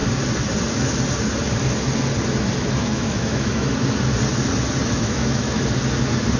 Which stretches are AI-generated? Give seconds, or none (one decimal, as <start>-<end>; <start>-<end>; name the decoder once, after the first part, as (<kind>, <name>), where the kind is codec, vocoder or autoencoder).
2.8-3.7 (autoencoder, DAC-VAE); 4.8-5.6